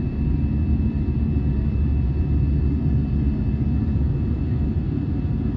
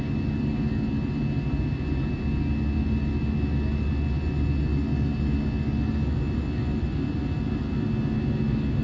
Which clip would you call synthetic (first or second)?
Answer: first